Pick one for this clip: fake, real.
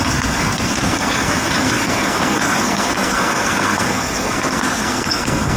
fake